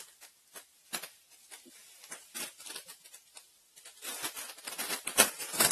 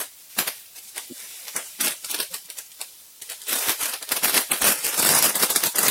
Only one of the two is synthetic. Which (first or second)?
second